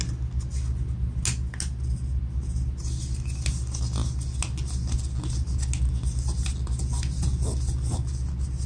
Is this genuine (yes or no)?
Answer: yes